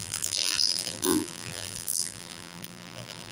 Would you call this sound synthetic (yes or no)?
yes